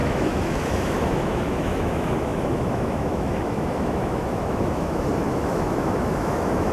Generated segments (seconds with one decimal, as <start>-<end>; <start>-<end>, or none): 0.0-6.7